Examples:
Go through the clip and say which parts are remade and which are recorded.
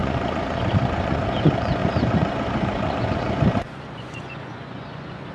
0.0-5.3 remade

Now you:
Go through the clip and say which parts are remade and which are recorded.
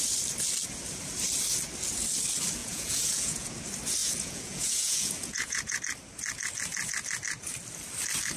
0.0-2.6 recorded; 2.6-3.6 remade; 3.6-4.0 recorded; 4.0-5.8 remade; 5.8-8.4 recorded